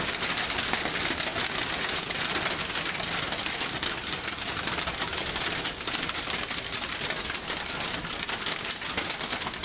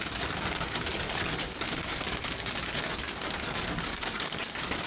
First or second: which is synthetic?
second